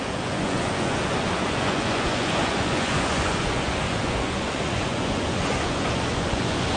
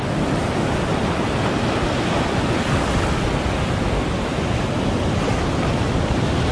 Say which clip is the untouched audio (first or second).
second